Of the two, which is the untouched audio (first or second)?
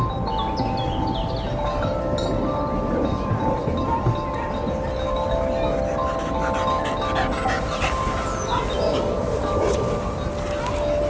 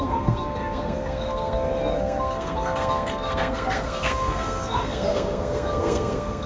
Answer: first